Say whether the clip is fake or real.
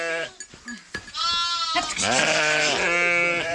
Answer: real